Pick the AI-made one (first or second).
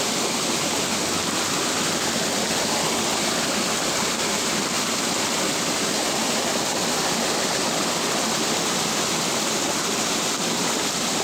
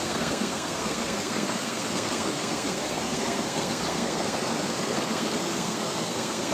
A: second